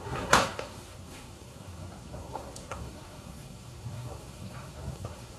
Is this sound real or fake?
fake